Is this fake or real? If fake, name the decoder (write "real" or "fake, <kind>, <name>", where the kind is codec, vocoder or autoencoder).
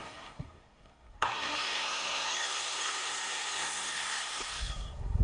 fake, codec, SNAC